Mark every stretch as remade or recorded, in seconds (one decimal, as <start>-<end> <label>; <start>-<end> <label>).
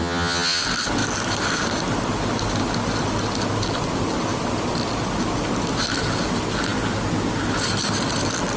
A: 0.0-0.6 remade; 0.6-8.6 recorded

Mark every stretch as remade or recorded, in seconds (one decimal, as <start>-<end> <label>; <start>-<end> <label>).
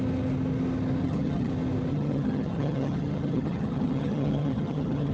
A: 0.0-1.0 recorded; 1.0-1.5 remade; 1.5-1.9 recorded; 1.9-5.1 remade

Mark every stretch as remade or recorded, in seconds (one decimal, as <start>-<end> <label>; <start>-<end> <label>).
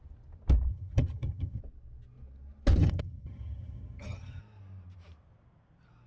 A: 0.0-0.7 recorded; 0.7-1.6 remade; 1.6-2.8 recorded; 2.8-4.4 remade; 4.4-6.1 recorded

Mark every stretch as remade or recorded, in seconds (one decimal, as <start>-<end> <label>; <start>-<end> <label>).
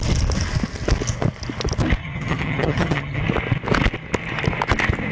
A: 0.0-2.0 recorded; 2.0-3.2 remade; 3.2-5.1 recorded